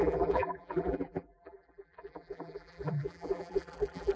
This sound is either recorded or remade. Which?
remade